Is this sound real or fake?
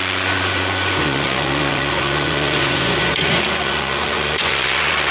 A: fake